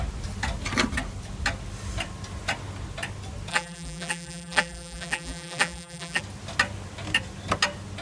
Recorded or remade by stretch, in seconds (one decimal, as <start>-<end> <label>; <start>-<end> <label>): 0.0-3.5 recorded; 3.5-6.2 remade; 6.2-8.0 recorded